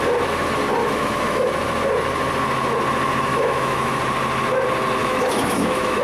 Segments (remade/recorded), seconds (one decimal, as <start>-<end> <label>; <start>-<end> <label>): 0.0-0.8 recorded; 0.8-1.5 remade; 1.5-3.3 recorded; 3.3-4.0 remade; 4.0-5.0 recorded; 5.0-6.0 remade